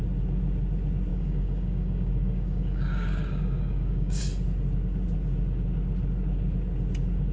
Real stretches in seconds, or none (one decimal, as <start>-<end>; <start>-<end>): 0.0-1.1; 4.2-7.3

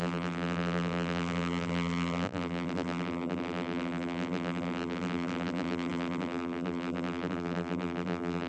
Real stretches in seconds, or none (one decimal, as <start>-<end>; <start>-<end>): none

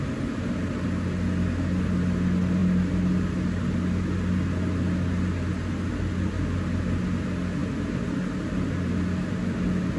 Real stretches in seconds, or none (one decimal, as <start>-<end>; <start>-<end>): 0.0-10.0

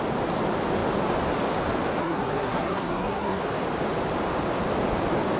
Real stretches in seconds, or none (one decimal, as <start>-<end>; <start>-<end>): 0.0-2.0; 3.4-5.4

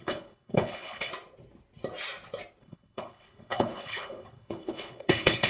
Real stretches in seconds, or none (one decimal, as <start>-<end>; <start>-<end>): 1.1-2.6

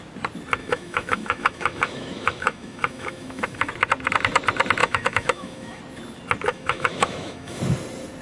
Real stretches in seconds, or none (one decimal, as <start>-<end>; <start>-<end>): 0.0-0.6; 3.7-4.8; 5.8-6.5; 7.6-8.2

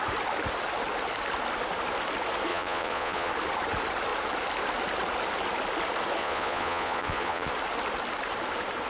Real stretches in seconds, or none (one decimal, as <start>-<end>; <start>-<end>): 0.0-2.5; 3.3-6.2; 7.5-8.9

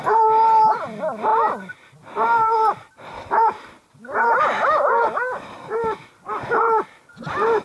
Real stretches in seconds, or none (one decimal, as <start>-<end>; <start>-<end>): 0.0-7.6